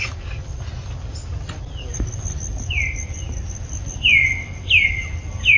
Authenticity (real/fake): real